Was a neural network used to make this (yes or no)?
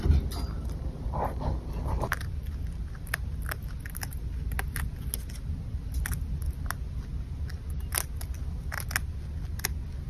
no